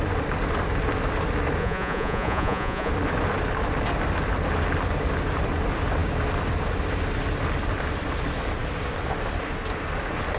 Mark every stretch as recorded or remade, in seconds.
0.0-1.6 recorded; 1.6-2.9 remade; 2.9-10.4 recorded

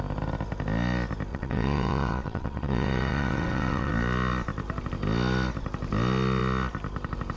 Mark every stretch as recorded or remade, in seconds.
0.0-1.3 recorded; 1.3-3.9 remade; 3.9-7.4 recorded

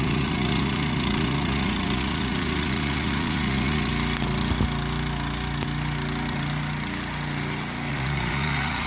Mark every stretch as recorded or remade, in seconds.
0.0-3.9 remade; 3.9-7.9 recorded; 7.9-8.9 remade